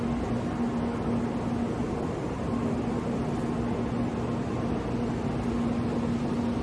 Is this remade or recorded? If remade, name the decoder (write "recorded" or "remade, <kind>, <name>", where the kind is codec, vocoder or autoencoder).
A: recorded